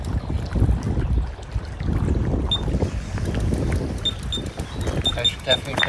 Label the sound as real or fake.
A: real